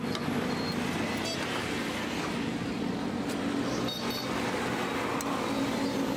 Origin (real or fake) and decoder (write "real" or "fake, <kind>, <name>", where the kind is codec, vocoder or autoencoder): real